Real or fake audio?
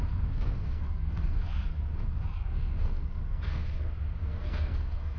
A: fake